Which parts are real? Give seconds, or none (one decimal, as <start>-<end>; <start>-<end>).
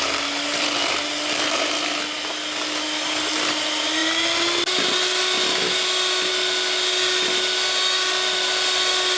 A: 0.0-9.2